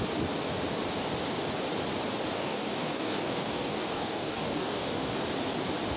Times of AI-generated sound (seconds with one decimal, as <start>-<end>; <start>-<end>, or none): 2.3-5.2